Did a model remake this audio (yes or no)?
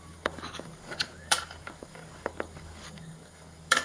yes